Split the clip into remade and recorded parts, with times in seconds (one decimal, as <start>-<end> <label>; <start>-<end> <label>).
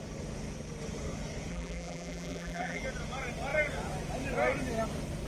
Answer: 0.0-1.5 recorded; 1.5-2.8 remade; 2.8-5.3 recorded